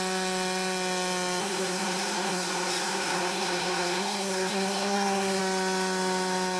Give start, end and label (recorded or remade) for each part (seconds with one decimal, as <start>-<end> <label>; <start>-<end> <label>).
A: 0.0-1.4 recorded; 1.4-5.4 remade; 5.4-6.6 recorded

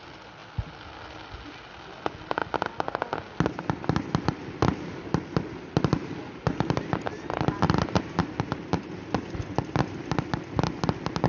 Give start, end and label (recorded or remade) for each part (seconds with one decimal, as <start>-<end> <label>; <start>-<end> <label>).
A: 0.0-11.3 recorded

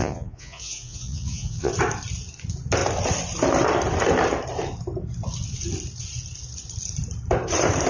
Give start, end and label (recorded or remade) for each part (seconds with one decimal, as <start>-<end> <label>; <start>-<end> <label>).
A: 0.0-1.7 remade; 1.7-7.9 recorded

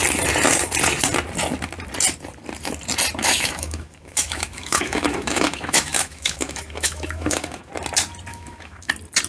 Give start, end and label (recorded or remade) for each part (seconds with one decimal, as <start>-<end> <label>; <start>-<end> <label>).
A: 0.0-3.2 recorded; 3.2-7.7 remade; 7.7-8.3 recorded; 8.3-8.9 remade; 8.9-9.3 recorded

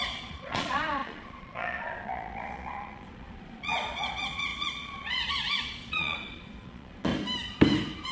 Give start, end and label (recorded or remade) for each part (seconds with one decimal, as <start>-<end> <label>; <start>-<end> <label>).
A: 0.0-7.1 remade; 7.1-8.1 recorded